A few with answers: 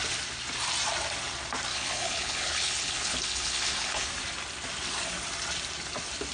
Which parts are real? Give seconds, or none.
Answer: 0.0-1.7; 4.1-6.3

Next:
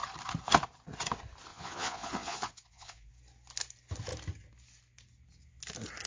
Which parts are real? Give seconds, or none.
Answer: 0.0-1.5; 3.1-6.1

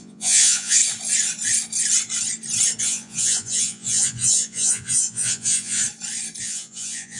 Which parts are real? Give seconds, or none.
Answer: 0.8-2.8; 5.8-6.4